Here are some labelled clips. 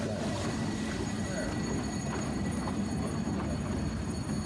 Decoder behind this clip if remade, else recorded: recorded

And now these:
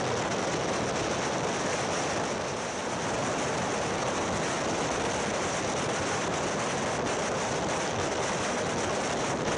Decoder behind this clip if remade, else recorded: recorded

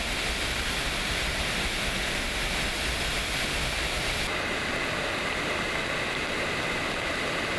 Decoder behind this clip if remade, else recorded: recorded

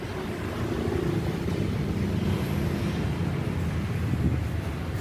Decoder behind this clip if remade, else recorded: recorded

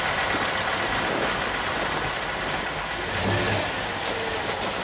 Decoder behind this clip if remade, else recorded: recorded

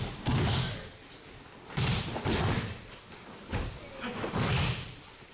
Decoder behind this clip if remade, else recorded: recorded